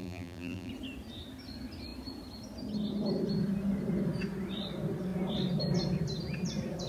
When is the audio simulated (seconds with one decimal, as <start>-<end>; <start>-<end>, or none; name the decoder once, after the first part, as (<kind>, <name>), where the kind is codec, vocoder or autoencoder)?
0.0-0.7 (vocoder, BigVGAN v2)